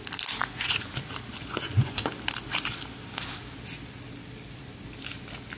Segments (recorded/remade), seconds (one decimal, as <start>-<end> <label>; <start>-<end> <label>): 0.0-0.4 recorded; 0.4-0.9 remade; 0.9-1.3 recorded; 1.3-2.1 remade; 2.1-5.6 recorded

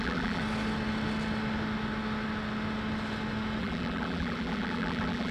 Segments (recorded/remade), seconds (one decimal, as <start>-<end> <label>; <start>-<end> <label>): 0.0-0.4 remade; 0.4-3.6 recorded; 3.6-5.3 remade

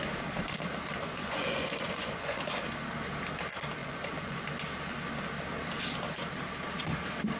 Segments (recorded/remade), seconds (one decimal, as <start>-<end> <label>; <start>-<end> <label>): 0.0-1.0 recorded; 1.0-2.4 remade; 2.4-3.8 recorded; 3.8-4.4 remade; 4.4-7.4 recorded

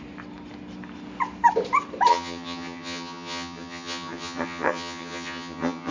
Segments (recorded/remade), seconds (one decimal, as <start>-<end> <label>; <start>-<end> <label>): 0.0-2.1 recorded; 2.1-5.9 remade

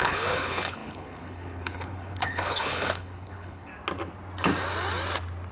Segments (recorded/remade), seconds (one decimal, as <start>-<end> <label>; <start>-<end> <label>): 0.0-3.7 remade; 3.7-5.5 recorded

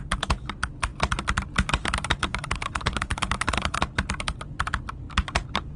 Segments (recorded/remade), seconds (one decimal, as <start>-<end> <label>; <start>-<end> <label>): 0.0-2.3 recorded; 2.3-3.8 remade; 3.8-5.8 recorded